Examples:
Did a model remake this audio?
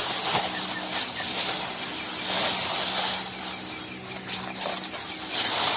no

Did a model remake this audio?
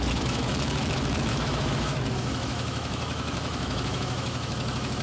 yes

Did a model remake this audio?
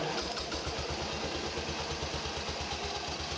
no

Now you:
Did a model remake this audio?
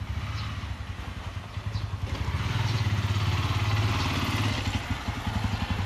no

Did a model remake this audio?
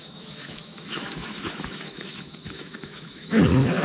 yes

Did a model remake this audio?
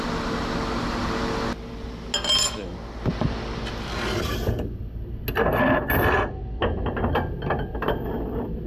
no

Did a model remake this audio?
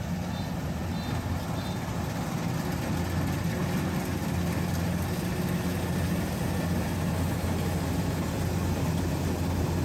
no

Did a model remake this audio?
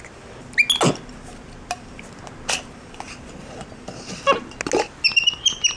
no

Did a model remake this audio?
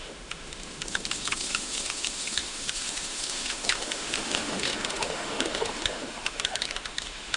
yes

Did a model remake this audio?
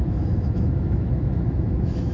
yes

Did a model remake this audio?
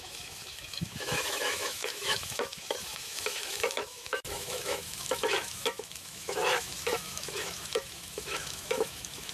yes